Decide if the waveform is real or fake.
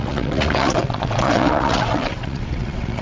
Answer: fake